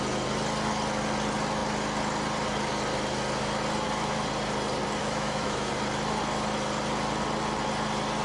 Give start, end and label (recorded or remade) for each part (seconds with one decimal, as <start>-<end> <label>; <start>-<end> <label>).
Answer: 0.0-5.0 recorded; 5.0-5.7 remade; 5.7-8.2 recorded